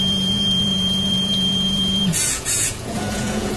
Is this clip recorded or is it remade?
remade